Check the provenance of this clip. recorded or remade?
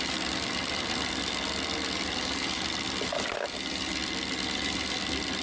recorded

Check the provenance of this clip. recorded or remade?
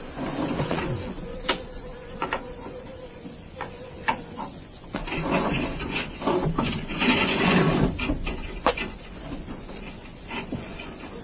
remade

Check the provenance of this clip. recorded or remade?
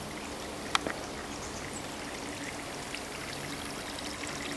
recorded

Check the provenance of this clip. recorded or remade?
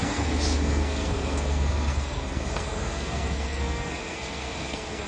remade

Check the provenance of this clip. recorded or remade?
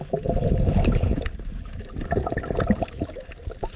recorded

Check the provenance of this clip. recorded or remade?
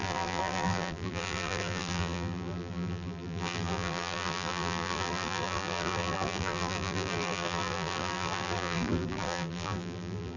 remade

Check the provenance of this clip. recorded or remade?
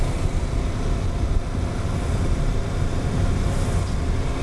recorded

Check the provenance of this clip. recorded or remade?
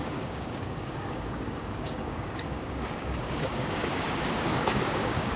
remade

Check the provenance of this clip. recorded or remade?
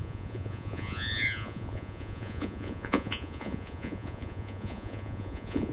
remade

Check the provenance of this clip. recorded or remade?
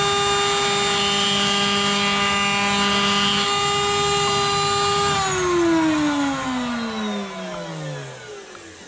recorded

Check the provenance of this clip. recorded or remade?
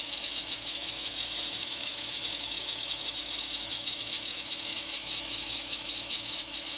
remade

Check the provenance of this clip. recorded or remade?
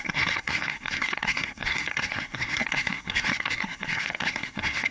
remade